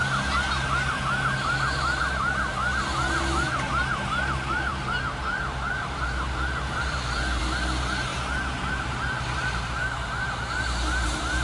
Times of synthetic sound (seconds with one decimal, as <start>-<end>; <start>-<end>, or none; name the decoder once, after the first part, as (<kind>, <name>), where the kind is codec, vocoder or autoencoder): none